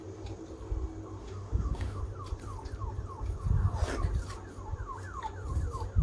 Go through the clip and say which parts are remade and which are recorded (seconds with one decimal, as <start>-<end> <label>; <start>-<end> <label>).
0.0-1.2 recorded; 1.2-2.0 remade; 2.0-6.0 recorded